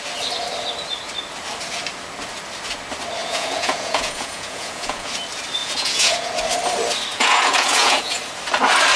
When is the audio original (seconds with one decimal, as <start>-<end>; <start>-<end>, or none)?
0.0-3.2; 5.1-5.6; 6.3-7.1; 8.2-9.0